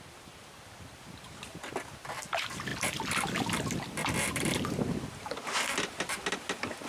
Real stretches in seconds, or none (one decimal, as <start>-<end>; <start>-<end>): 0.0-6.9

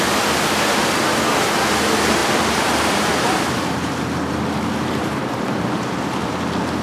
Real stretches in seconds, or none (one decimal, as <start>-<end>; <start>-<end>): 0.0-2.2; 6.3-6.8